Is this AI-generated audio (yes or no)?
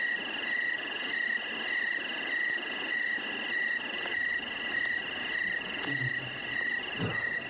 no